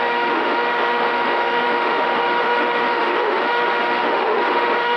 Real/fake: fake